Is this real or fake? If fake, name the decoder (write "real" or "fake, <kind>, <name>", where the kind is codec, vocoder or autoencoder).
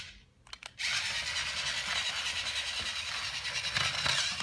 real